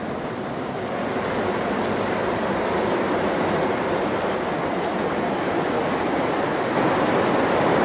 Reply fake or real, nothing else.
real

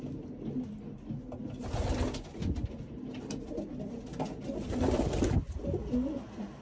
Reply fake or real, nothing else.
real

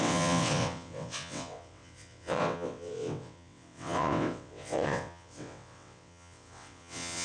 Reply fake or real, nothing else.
fake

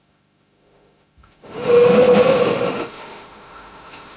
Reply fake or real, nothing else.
fake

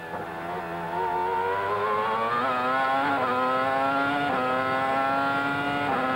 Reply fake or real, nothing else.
real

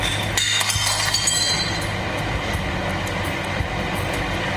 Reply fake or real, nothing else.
real